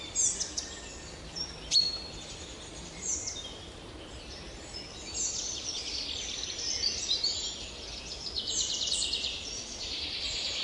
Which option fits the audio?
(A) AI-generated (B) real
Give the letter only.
A